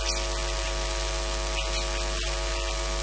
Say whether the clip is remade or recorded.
recorded